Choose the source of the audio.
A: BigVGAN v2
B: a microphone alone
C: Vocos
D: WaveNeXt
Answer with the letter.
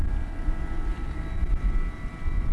B